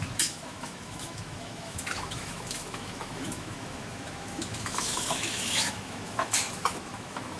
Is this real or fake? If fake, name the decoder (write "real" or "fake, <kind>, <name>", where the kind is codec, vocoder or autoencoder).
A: fake, autoencoder, DAC-VAE